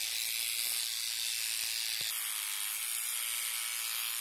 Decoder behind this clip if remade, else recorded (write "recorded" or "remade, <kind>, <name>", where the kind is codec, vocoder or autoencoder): recorded